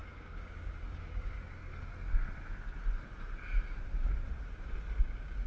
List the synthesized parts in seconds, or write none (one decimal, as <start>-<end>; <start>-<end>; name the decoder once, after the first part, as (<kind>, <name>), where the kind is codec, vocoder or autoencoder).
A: 0.0-1.7 (codec, DAC); 5.0-5.5